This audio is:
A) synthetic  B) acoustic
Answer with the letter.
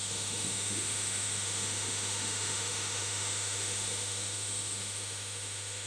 A